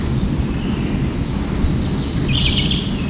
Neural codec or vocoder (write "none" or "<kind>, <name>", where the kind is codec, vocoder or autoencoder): none